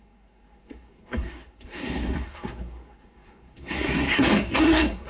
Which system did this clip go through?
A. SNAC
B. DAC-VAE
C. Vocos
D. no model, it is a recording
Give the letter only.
A